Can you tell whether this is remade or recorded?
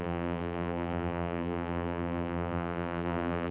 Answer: remade